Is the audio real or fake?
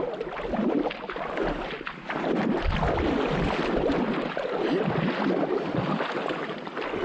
real